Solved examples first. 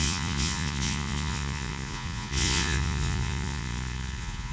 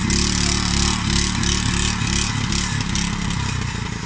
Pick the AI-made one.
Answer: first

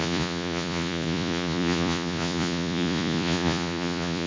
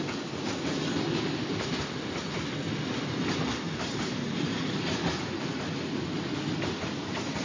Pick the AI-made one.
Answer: first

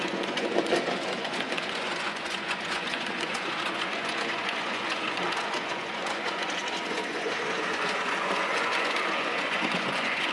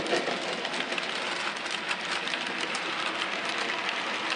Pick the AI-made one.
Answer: first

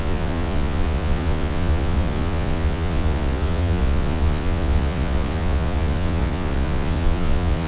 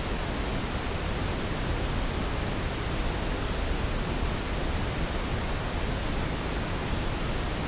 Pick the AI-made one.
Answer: first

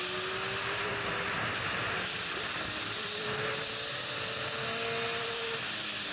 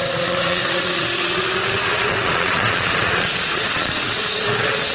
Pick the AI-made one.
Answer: second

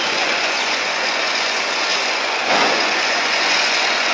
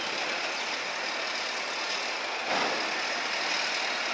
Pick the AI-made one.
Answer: first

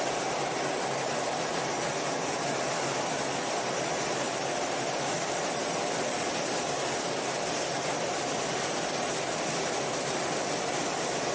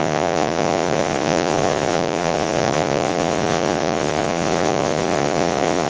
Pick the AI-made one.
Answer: second